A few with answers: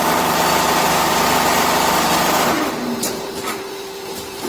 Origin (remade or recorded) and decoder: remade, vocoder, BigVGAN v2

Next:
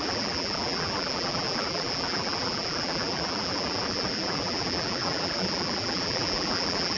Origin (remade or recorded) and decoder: remade, vocoder, BigVGAN v2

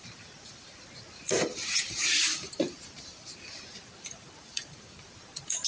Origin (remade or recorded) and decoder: remade, vocoder, BigVGAN v2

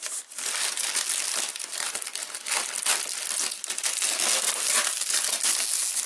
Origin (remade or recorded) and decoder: recorded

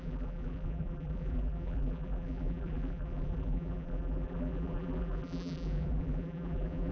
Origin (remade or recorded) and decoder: remade, vocoder, BigVGAN v2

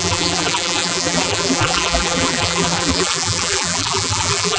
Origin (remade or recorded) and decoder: remade, vocoder, BigVGAN v2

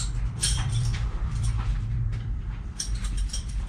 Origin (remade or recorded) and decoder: remade, vocoder, BigVGAN v2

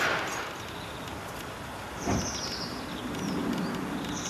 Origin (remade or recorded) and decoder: remade, vocoder, BigVGAN v2